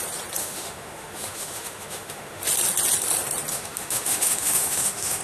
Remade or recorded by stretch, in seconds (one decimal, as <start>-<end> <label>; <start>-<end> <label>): 0.0-0.4 recorded; 0.4-2.4 remade; 2.4-3.5 recorded; 3.5-5.2 remade

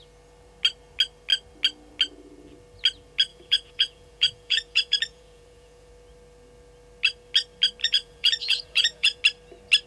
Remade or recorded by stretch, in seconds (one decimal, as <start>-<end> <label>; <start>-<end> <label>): 0.0-3.3 recorded; 3.3-5.9 remade; 5.9-7.8 recorded; 7.8-9.2 remade; 9.2-9.9 recorded